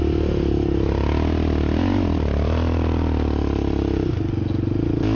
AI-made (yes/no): no